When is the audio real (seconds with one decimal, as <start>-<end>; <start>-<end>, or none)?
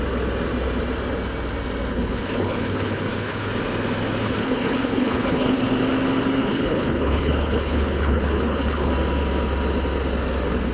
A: 0.0-1.9; 3.5-4.2; 5.7-6.4; 8.9-10.7